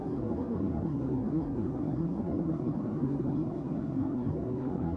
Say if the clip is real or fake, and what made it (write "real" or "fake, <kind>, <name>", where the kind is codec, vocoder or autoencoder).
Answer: fake, codec, SNAC